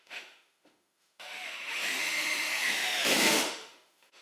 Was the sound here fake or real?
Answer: fake